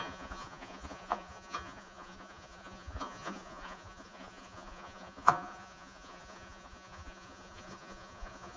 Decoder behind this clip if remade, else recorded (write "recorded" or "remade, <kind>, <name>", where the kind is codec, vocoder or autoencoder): remade, vocoder, Vocos